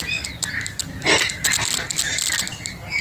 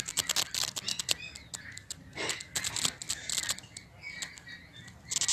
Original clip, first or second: second